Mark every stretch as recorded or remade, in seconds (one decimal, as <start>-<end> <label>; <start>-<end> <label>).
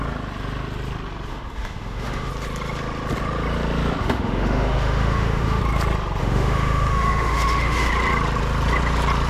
0.0-1.3 recorded; 1.3-2.3 remade; 2.3-4.0 recorded; 4.0-5.6 remade; 5.6-6.2 recorded; 6.2-7.9 remade; 7.9-9.3 recorded